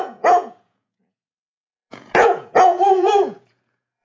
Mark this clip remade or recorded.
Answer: remade